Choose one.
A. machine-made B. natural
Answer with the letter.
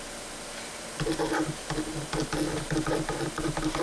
B